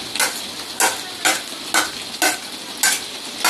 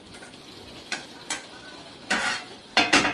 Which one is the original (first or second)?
first